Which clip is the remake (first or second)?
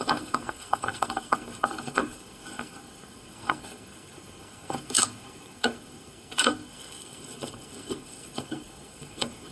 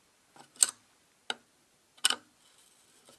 first